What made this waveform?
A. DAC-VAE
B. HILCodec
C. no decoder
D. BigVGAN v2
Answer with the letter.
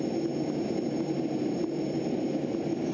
D